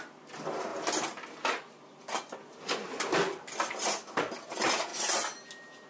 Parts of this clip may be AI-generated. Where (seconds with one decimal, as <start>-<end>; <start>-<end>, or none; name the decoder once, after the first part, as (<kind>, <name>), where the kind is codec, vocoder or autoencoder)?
none